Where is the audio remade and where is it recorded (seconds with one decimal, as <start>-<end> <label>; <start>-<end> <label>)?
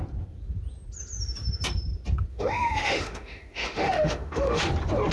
0.0-2.3 recorded; 2.3-4.6 remade; 4.6-5.1 recorded